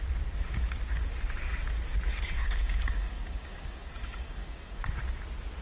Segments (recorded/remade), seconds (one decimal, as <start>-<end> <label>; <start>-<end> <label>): 0.0-2.4 recorded; 2.4-4.8 remade; 4.8-5.6 recorded